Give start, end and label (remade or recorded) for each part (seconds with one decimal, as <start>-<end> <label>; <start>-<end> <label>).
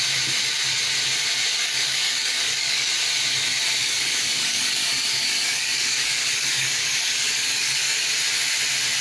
0.0-1.5 recorded; 1.5-2.9 remade; 2.9-3.8 recorded; 3.8-8.1 remade; 8.1-9.0 recorded